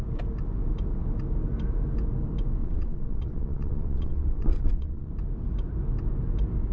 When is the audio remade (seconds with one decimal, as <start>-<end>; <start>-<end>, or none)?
2.6-5.1